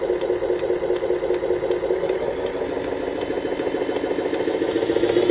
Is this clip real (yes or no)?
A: yes